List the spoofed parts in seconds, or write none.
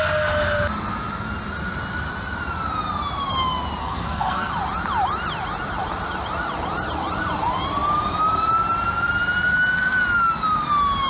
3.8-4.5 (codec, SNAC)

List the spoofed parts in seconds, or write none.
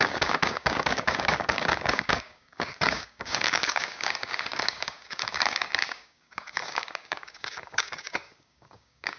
0.0-9.2 (codec, DAC)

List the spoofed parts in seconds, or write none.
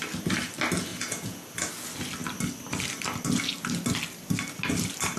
0.9-1.7 (vocoder, Vocos)